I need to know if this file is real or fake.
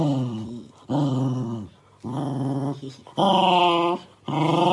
real